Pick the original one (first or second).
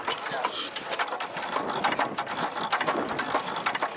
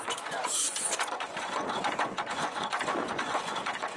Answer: first